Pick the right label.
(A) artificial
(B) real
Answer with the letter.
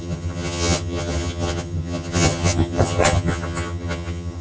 A